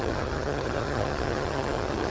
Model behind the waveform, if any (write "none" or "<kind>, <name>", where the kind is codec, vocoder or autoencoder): vocoder, HiFi-GAN